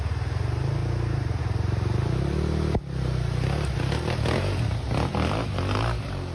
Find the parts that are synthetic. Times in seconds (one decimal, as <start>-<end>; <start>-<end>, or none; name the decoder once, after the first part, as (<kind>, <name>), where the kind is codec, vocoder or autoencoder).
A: none